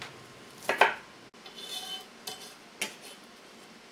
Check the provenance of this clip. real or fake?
real